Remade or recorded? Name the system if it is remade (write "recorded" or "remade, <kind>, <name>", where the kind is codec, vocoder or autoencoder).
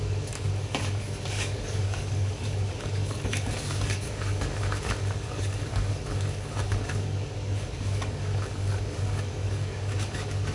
remade, codec, DAC